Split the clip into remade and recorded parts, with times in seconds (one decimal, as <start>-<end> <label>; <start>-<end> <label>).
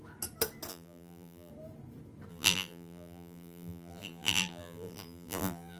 0.0-0.7 recorded; 0.7-1.5 remade; 1.5-2.3 recorded; 2.3-5.8 remade